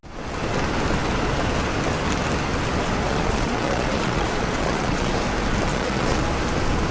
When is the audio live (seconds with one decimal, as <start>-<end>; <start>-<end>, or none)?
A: 0.0-3.1; 5.1-5.7; 6.2-6.9